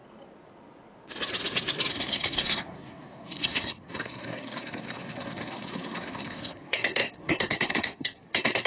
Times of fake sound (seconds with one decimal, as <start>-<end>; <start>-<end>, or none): 1.9-8.7